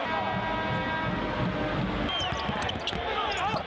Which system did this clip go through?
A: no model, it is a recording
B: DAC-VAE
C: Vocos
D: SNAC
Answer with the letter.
A